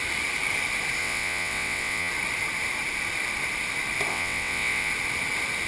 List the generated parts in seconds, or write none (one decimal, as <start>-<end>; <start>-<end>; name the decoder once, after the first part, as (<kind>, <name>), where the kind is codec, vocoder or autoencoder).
1.0-2.1 (vocoder, WaveNeXt); 4.1-4.9